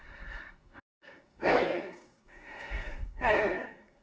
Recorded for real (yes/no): no